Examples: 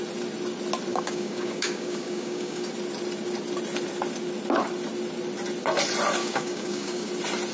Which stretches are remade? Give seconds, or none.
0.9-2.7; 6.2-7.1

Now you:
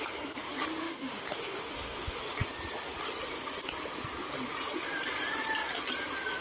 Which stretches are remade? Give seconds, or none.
0.8-2.2

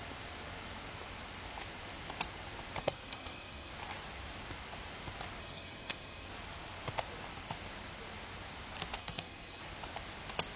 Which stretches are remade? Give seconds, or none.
2.8-3.7; 5.4-6.3; 9.0-9.6

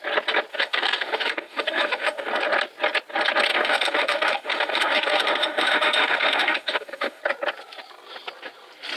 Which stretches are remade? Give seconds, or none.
0.5-2.3; 3.5-7.2

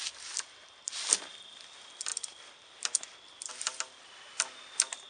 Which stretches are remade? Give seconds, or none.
none

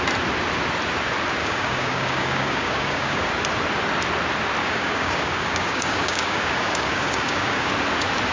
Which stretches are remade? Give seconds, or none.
1.4-3.3; 4.6-7.7

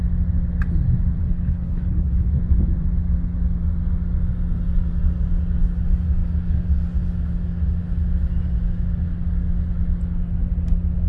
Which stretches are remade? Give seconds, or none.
1.2-2.3